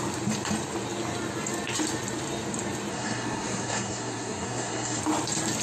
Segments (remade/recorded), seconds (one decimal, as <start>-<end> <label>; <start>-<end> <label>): 0.0-2.9 recorded; 2.9-5.0 remade; 5.0-5.6 recorded